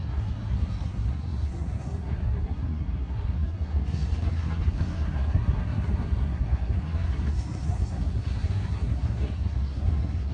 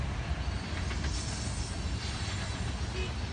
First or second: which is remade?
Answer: first